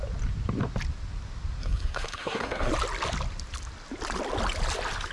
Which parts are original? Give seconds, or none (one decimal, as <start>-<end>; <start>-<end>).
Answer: 0.0-1.6; 2.7-5.1